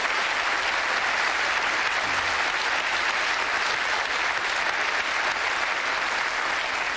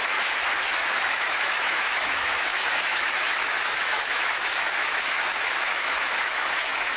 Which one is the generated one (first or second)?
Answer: second